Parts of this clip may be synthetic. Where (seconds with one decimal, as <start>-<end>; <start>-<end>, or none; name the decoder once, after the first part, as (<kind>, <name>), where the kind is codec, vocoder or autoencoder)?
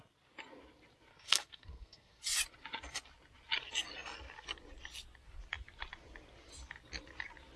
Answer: 1.1-2.2 (codec, SNAC)